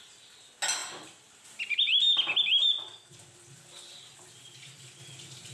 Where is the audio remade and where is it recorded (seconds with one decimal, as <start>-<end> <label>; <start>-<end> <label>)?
0.0-5.5 recorded